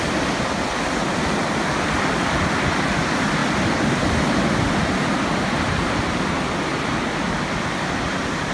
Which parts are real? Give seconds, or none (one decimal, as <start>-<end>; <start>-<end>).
0.0-8.5